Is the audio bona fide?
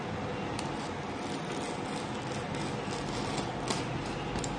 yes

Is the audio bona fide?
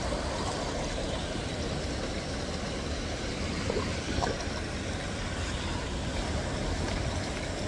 yes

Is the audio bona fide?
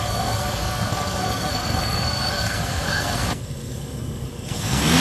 no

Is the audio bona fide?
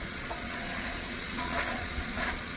no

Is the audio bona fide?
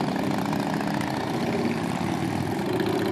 yes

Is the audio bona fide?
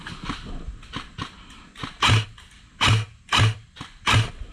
yes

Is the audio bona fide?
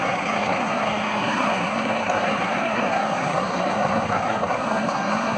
no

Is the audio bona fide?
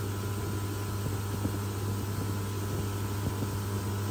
yes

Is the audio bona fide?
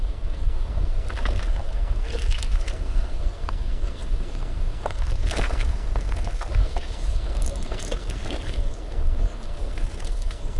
no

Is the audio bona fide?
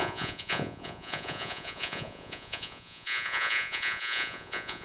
no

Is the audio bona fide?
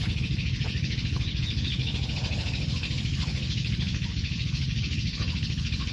no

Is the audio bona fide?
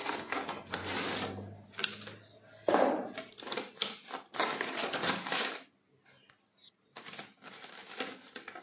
yes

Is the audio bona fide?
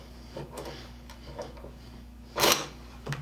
no